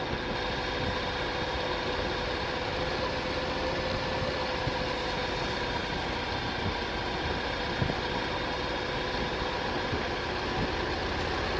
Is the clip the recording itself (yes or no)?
yes